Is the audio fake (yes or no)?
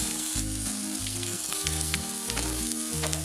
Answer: yes